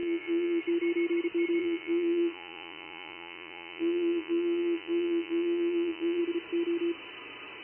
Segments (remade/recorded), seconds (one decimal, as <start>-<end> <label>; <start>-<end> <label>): 0.0-0.6 remade; 0.6-1.6 recorded; 1.6-6.2 remade; 6.2-7.6 recorded